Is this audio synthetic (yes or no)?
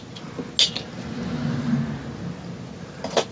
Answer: no